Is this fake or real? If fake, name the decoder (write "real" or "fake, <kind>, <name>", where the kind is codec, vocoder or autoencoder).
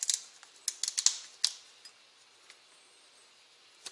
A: real